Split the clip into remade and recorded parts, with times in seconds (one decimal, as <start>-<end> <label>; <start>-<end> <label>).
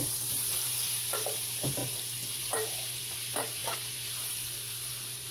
0.0-1.8 remade; 1.8-2.4 recorded; 2.4-5.3 remade